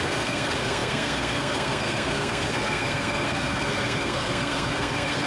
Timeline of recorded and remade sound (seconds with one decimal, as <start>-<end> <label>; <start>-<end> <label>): 0.0-5.3 remade